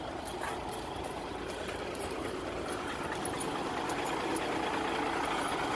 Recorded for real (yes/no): yes